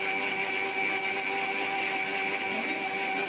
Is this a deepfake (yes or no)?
no